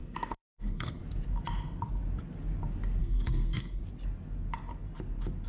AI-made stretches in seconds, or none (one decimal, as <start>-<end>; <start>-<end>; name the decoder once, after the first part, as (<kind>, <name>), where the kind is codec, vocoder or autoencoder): 0.0-1.0 (codec, SNAC); 3.0-3.8